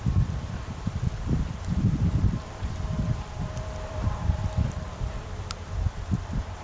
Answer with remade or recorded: remade